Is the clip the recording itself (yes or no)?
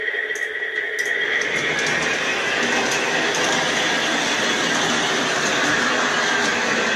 yes